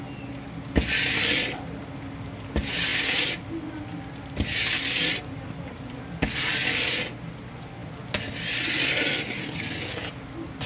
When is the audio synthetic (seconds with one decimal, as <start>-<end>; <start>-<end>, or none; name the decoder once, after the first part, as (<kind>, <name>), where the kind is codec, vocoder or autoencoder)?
none